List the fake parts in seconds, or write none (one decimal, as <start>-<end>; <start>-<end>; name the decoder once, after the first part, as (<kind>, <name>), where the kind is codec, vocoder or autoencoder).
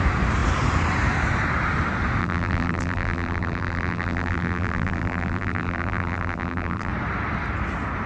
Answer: 2.2-6.9 (vocoder, BigVGAN v2)